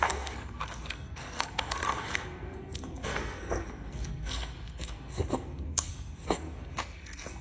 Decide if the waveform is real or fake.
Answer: fake